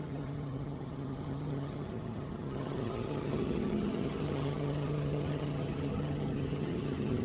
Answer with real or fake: fake